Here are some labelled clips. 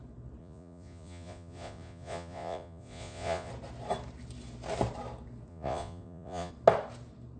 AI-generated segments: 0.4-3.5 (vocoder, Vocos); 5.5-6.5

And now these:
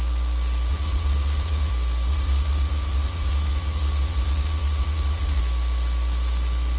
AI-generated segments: 0.7-1.7 (vocoder, Vocos); 2.1-5.4